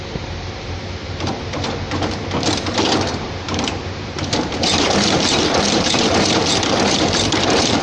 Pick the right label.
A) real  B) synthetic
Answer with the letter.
B